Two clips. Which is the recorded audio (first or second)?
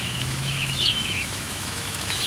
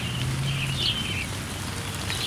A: second